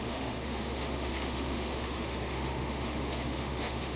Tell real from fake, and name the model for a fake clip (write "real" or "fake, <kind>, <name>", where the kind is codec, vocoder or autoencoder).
fake, autoencoder, DAC-VAE